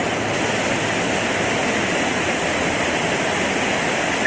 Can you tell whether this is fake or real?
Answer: real